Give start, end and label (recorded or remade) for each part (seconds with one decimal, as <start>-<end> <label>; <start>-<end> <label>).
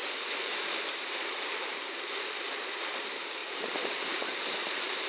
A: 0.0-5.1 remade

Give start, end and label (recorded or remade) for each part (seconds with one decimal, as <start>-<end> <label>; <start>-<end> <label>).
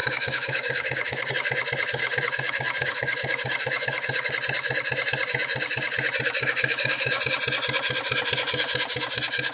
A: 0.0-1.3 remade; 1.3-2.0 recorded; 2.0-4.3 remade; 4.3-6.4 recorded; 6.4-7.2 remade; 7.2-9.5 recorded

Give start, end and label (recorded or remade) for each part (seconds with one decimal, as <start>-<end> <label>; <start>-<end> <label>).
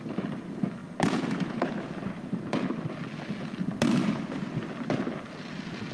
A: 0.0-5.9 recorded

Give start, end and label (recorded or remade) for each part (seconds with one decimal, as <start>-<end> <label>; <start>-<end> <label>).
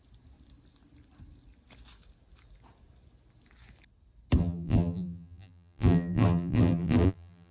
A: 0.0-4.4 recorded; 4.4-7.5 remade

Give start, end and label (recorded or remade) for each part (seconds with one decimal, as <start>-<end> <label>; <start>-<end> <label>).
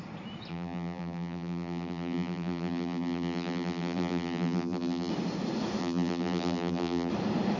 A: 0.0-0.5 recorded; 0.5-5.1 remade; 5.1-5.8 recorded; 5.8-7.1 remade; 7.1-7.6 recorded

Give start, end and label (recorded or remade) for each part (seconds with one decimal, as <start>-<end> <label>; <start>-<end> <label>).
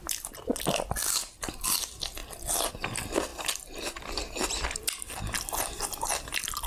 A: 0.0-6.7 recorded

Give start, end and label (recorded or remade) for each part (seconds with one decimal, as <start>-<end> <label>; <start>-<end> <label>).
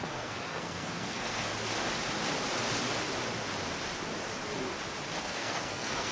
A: 0.0-1.5 remade; 1.5-5.2 recorded; 5.2-6.1 remade